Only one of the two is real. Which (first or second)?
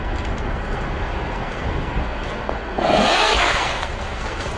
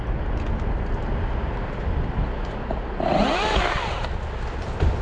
second